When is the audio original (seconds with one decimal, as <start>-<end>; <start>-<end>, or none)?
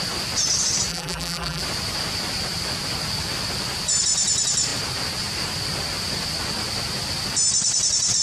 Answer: 0.0-0.9; 1.6-8.2